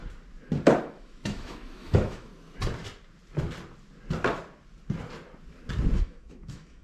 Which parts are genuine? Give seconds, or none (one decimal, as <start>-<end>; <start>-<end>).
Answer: 0.0-0.8; 2.3-6.0